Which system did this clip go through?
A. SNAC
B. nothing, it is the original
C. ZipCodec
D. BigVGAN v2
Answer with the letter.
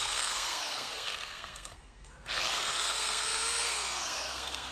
A